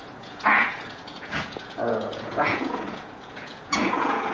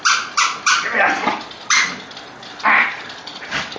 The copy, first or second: first